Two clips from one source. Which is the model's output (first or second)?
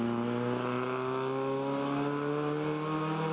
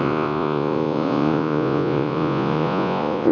second